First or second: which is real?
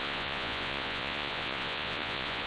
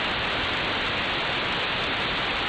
second